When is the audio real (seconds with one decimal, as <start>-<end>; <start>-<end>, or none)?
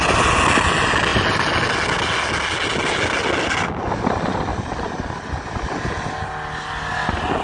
0.0-7.4